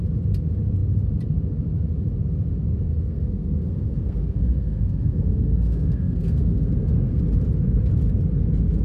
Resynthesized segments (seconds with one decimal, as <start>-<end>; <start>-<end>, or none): 2.9-7.2